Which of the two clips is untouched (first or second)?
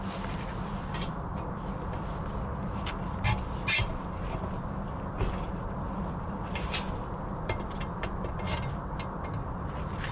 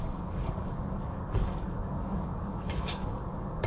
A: first